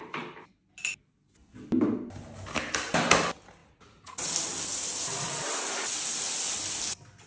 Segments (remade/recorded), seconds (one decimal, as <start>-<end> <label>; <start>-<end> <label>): 0.0-3.6 recorded; 3.6-4.3 remade; 4.3-7.3 recorded